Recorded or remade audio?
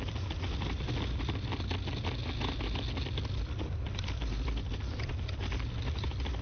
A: recorded